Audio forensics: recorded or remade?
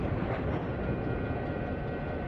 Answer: recorded